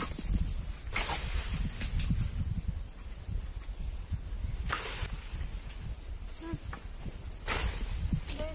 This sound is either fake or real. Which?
real